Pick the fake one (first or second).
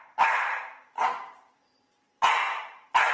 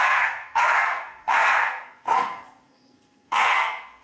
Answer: second